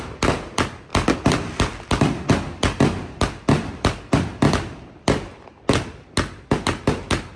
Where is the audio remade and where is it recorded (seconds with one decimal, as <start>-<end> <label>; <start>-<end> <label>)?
0.0-7.4 recorded